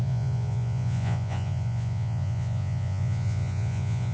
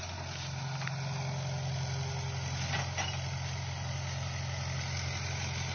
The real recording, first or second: second